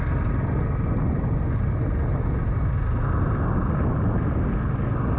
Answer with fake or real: real